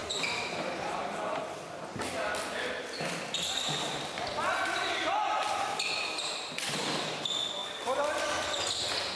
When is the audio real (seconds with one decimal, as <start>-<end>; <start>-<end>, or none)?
0.0-9.2